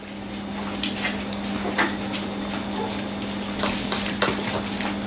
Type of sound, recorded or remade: recorded